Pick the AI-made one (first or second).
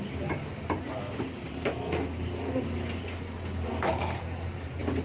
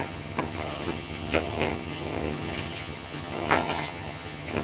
second